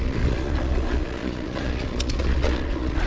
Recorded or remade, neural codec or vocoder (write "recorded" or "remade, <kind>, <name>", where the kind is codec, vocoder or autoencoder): remade, vocoder, Vocos